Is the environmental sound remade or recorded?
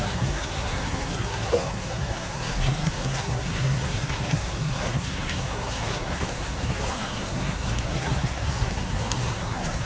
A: remade